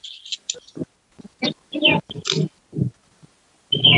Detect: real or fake real